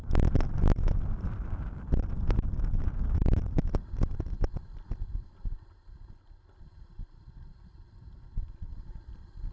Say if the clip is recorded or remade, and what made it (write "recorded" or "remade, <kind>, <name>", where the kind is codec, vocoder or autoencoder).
recorded